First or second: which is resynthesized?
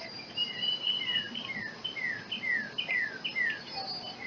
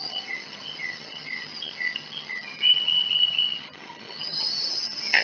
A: second